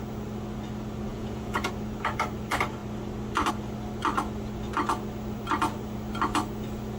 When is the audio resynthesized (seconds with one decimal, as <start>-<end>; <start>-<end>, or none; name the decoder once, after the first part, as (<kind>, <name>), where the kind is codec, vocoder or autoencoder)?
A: 1.1-1.7 (vocoder, Vocos)